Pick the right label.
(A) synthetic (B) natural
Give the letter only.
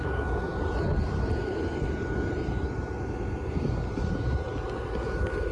B